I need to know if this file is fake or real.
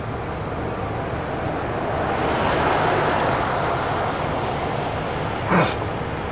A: real